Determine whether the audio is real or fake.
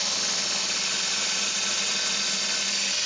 real